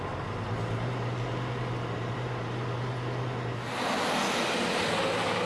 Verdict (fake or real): real